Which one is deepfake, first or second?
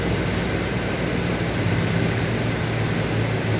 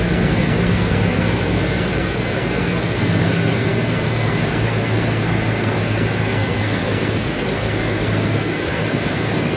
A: second